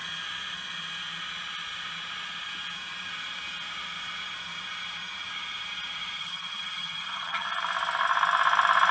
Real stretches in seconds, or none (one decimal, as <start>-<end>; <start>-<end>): 0.0-6.2; 7.5-8.9